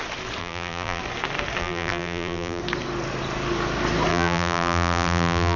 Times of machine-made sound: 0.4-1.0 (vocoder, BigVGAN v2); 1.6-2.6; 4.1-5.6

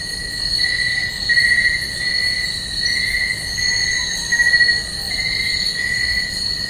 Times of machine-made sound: 4.3-4.8 (vocoder, BigVGAN v2)

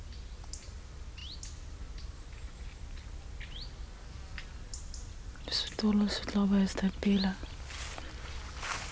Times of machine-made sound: none

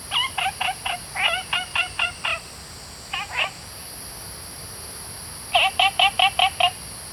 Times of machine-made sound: none

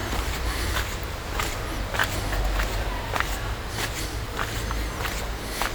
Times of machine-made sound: 0.0-0.7 (vocoder, BigVGAN v2)